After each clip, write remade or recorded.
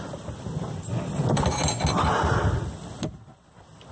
recorded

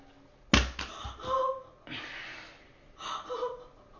recorded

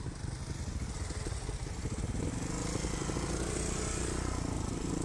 recorded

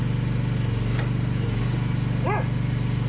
recorded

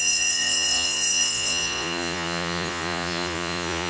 remade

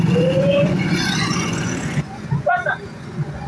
remade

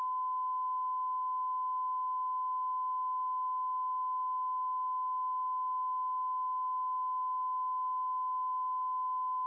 recorded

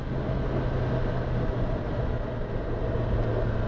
recorded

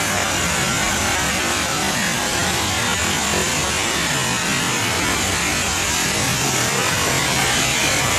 recorded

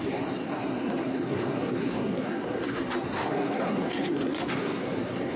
remade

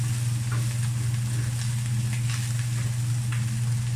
recorded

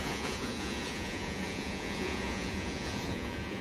remade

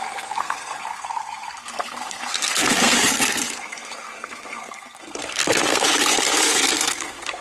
remade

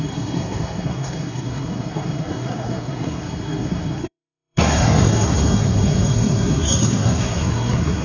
remade